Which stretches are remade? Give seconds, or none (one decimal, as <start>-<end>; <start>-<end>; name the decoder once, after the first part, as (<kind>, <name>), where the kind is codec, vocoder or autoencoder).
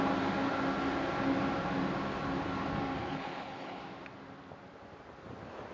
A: 3.0-3.8 (codec, HILCodec)